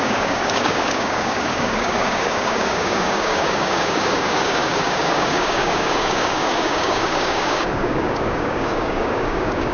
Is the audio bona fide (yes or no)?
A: no